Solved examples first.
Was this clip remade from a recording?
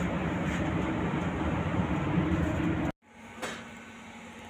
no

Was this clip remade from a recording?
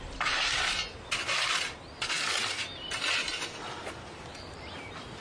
no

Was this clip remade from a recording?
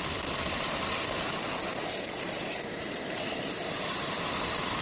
yes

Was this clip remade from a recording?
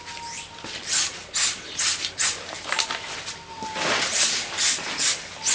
no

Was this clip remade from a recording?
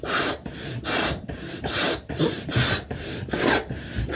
yes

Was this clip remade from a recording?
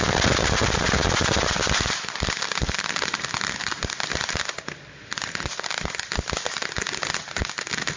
no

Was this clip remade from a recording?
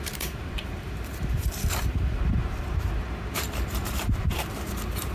yes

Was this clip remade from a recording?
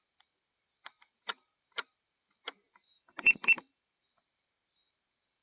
yes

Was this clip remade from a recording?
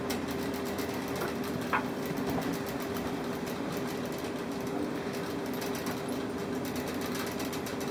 no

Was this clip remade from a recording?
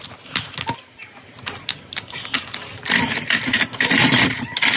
no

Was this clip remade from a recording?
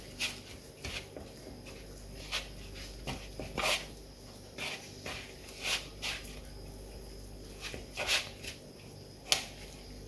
no